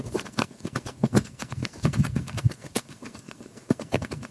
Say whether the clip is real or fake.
fake